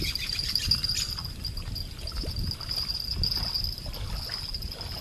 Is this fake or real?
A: real